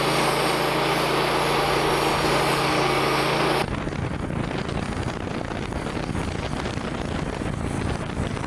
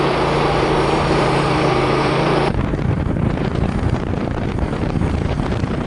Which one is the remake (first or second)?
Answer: second